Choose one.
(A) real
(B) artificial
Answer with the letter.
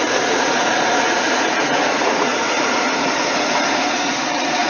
B